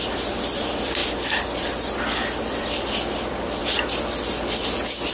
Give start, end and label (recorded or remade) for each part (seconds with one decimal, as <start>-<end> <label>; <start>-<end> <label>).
0.0-1.0 remade; 1.0-2.6 recorded; 2.6-3.6 remade; 3.6-5.1 recorded